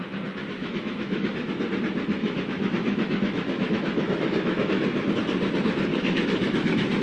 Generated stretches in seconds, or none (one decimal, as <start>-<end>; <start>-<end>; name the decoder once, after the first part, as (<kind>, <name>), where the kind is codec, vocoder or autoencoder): 0.6-1.5 (autoencoder, DAC-VAE); 2.2-5.1; 5.9-7.0